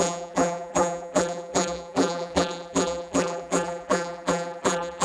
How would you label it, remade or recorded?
remade